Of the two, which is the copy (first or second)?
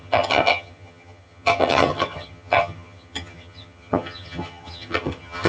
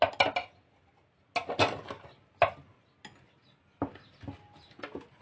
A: first